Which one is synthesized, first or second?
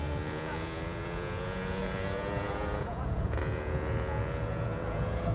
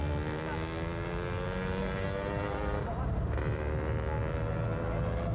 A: first